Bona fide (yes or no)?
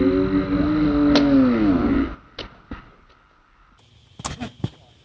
yes